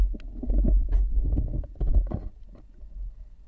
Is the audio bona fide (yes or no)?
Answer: yes